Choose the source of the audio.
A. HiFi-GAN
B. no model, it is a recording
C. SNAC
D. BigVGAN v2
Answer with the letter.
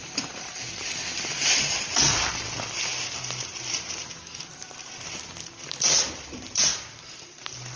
B